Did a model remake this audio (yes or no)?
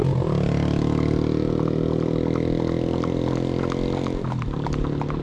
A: no